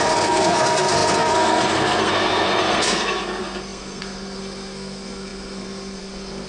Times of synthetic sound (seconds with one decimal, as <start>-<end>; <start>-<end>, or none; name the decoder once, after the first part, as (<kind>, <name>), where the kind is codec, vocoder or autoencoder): 0.0-6.5 (codec, SNAC)